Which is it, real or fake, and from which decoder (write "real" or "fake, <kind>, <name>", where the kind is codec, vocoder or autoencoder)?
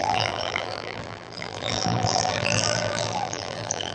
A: fake, vocoder, BigVGAN v2